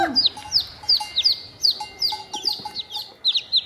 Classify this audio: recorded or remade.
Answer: recorded